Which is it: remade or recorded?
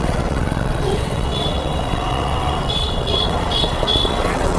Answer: remade